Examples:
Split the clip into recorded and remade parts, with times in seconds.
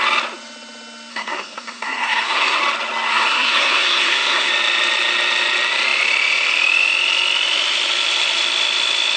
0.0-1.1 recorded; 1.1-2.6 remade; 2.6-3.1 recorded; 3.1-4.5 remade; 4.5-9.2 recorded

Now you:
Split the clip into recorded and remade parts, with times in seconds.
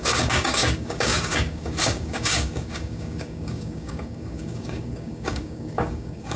0.0-6.4 remade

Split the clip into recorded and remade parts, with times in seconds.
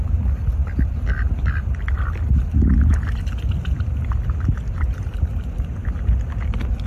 0.0-6.9 recorded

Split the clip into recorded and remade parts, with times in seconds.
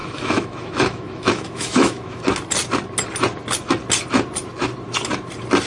0.0-2.2 remade; 2.2-5.7 recorded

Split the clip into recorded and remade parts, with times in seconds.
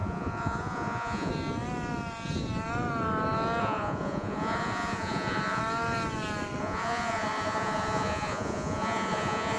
0.0-1.3 remade; 1.3-3.6 recorded; 3.6-5.6 remade; 5.6-6.6 recorded; 6.6-9.6 remade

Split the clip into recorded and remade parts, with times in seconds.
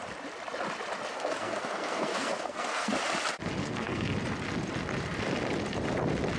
0.0-1.1 recorded; 1.1-2.9 remade; 2.9-3.6 recorded; 3.6-4.1 remade; 4.1-6.4 recorded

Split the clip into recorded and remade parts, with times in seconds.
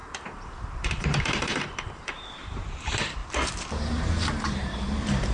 0.0-3.2 remade; 3.2-3.9 recorded; 3.9-5.3 remade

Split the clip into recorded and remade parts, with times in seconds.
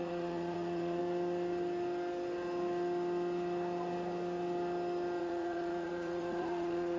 0.0-1.0 remade; 1.0-5.2 recorded; 5.2-7.0 remade